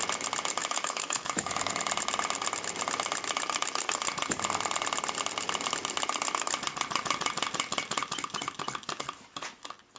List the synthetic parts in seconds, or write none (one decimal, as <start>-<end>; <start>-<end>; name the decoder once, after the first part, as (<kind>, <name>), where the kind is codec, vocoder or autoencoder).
0.6-1.7 (autoencoder, DAC-VAE)